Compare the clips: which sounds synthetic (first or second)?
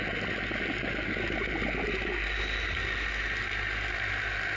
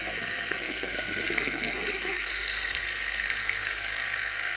second